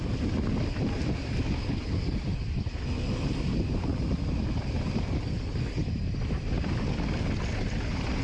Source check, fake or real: real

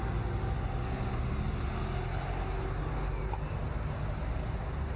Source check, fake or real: real